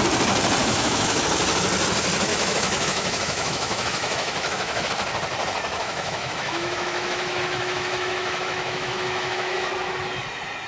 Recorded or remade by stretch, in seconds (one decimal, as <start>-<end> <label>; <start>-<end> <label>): 0.0-0.6 recorded; 0.6-1.2 remade; 1.2-2.3 recorded; 2.3-4.9 remade; 4.9-5.8 recorded; 5.8-9.7 remade; 9.7-10.7 recorded